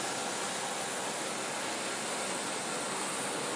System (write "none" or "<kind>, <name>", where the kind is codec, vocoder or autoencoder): none